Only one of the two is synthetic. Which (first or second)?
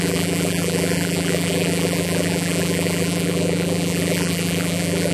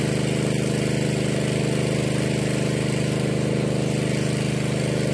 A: first